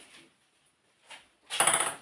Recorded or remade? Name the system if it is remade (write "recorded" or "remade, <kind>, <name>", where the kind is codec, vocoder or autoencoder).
recorded